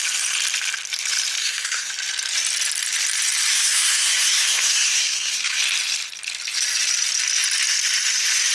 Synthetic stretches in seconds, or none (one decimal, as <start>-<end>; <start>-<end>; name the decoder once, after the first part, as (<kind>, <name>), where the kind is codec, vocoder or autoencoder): 1.4-1.9 (codec, SNAC); 3.5-5.6